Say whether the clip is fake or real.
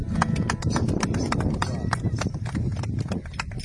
real